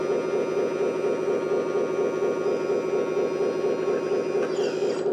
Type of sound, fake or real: real